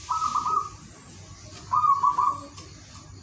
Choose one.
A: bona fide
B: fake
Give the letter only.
A